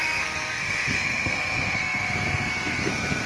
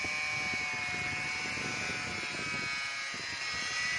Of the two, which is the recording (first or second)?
second